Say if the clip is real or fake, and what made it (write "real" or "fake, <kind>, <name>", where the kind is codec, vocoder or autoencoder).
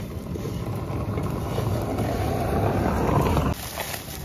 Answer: real